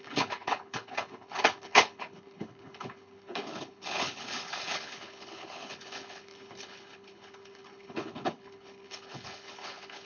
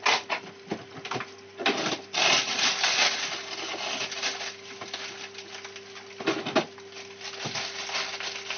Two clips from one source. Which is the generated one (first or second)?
first